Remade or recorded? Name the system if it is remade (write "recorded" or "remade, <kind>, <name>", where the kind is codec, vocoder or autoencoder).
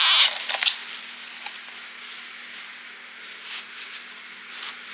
recorded